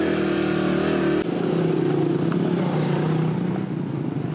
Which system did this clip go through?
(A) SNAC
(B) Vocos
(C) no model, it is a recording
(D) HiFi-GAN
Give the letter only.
C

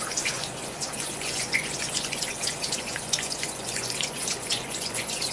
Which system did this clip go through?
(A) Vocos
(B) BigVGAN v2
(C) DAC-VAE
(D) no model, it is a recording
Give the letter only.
A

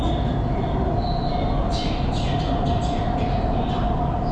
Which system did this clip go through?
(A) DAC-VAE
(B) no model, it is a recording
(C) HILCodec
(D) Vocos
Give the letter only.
B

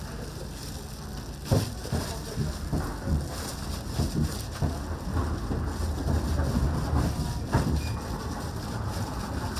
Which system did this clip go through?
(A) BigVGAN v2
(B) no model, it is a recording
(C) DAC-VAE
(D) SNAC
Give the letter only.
B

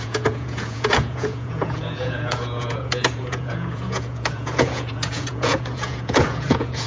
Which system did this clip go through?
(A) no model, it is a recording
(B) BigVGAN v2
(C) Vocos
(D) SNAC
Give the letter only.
C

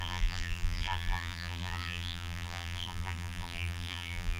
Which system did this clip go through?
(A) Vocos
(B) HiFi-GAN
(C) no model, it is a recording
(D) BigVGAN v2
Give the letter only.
D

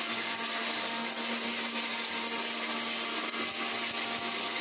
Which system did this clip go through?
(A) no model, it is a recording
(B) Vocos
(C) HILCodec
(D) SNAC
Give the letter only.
A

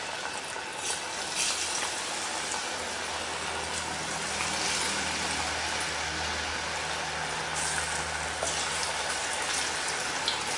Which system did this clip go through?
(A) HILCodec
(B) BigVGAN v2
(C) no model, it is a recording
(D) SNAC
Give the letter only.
C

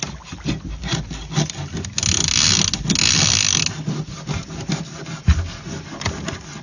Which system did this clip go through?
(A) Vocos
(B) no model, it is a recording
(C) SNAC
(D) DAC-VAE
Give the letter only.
B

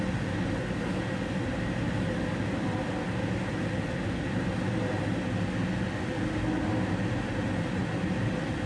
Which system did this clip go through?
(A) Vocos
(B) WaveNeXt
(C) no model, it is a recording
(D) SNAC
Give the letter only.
C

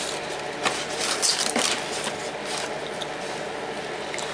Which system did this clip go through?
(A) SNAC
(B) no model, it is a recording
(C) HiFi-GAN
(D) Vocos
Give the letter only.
B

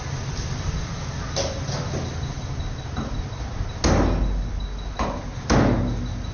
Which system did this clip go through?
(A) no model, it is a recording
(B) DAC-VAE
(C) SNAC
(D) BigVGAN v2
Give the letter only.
A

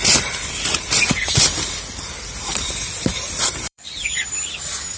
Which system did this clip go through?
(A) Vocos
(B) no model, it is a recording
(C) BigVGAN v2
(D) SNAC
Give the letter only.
C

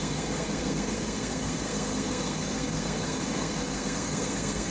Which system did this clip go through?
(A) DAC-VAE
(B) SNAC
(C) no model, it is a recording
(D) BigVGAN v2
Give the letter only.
B